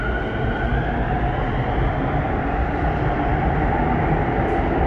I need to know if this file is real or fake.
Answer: real